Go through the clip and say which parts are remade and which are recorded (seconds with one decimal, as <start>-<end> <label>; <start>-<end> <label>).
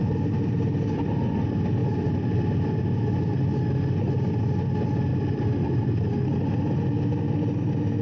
0.0-1.8 recorded; 1.8-2.8 remade; 2.8-5.1 recorded; 5.1-5.7 remade; 5.7-8.0 recorded